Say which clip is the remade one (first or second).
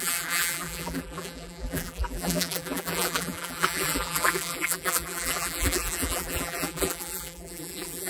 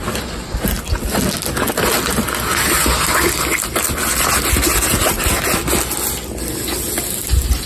first